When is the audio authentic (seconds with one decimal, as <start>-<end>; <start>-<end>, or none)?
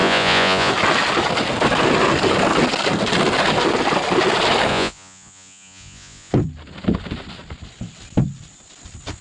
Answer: 0.7-4.7; 6.3-9.2